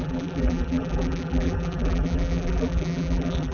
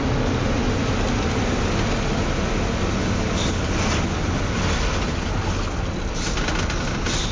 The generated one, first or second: first